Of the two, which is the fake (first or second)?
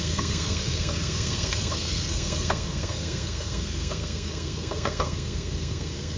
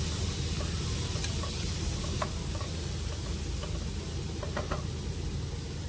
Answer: first